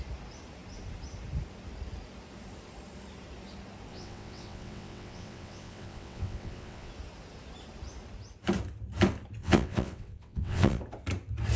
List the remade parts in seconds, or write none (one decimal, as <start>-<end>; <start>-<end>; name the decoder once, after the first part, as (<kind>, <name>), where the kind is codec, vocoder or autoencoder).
3.9-6.9 (vocoder, WaveNeXt); 9.4-10.8